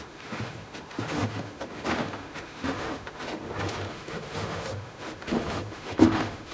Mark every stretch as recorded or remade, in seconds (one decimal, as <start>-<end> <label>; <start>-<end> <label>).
0.0-6.5 remade